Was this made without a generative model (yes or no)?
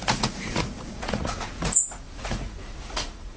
no